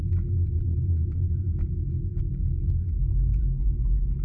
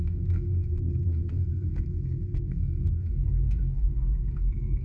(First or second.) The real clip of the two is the first